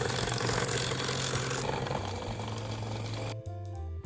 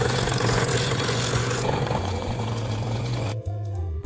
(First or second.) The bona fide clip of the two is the first